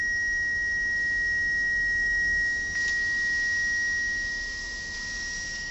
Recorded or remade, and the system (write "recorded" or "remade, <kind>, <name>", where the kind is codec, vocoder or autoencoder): recorded